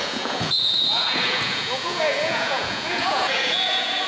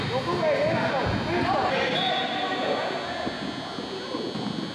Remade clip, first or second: first